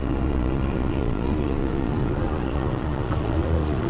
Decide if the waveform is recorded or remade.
remade